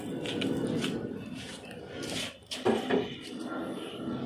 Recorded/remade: recorded